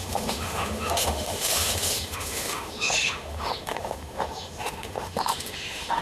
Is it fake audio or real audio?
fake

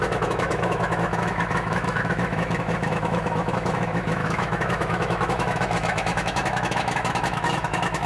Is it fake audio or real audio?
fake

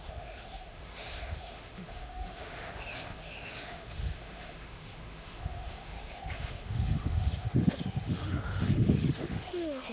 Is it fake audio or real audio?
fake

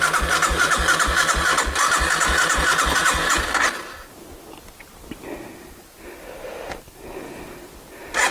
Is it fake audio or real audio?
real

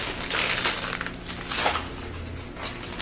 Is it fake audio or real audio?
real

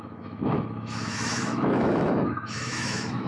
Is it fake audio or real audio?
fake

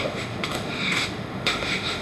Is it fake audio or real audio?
fake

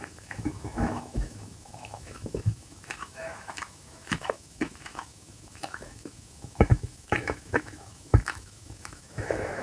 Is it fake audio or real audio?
fake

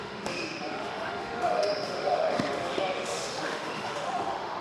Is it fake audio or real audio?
fake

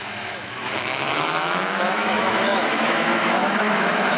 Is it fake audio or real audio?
fake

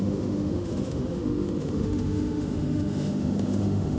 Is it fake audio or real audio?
fake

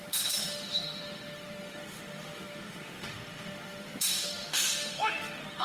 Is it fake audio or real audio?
fake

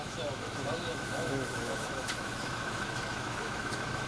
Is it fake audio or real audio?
fake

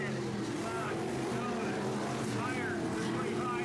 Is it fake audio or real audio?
real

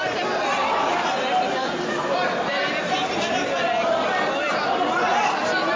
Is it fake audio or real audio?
real